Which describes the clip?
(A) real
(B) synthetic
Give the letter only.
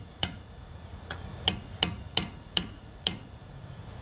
B